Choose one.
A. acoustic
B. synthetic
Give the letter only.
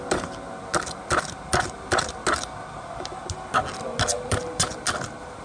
A